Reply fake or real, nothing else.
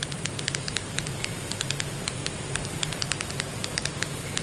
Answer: fake